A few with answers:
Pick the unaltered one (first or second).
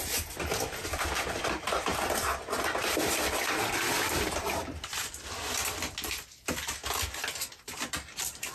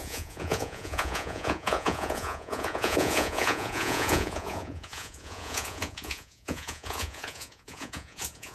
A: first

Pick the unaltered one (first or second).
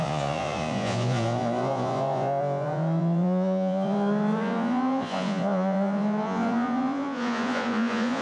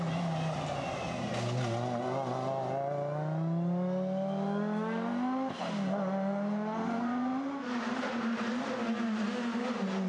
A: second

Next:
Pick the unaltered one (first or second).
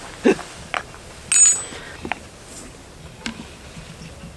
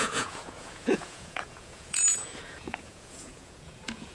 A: first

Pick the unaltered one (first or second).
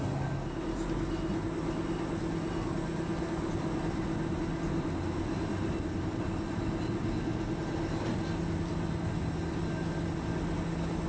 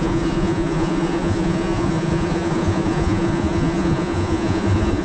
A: first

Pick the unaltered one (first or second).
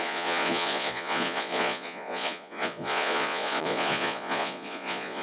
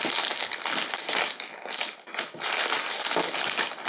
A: second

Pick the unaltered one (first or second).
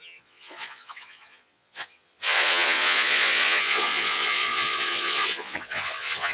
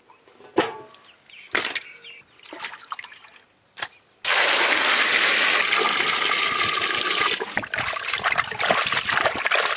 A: second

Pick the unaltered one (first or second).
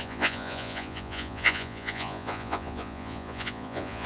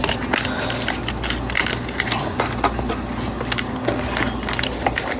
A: second